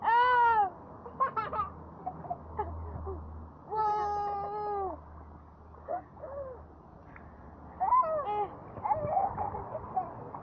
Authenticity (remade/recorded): recorded